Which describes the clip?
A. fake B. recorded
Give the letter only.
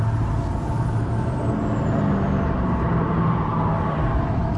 B